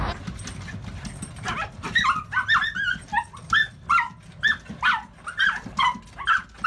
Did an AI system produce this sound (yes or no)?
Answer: no